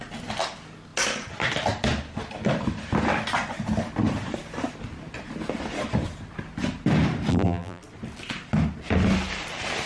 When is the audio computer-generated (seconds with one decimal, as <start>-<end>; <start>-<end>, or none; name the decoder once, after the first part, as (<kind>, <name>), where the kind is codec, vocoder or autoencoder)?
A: 7.3-7.8 (vocoder, BigVGAN v2)